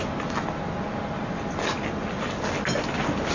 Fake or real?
real